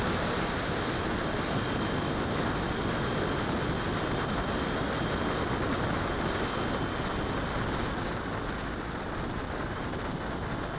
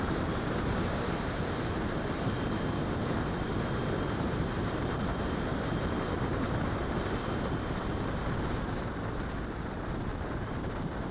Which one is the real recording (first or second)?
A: first